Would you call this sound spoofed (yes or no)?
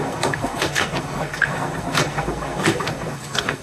yes